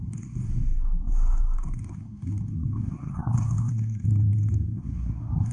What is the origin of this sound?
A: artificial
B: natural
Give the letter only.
A